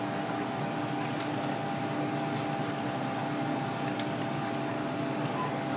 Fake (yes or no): no